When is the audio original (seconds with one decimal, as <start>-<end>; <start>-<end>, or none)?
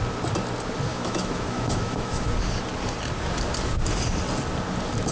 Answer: 0.0-0.9; 2.3-5.1